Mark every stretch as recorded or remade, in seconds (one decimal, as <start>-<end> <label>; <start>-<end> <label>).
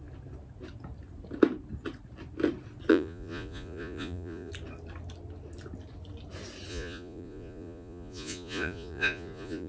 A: 0.0-2.9 recorded; 2.9-4.5 remade; 4.5-6.7 recorded; 6.7-9.7 remade